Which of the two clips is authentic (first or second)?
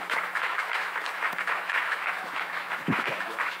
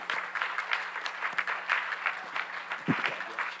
second